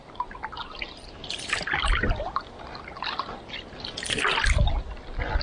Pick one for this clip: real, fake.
real